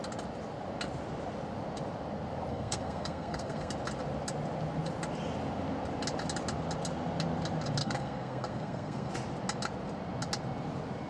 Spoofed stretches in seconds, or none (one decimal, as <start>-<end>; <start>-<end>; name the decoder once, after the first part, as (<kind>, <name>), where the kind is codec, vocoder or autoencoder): 2.5-3.7 (codec, SNAC); 7.8-9.1